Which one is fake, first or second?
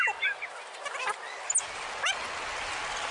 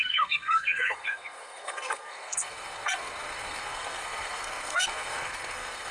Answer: second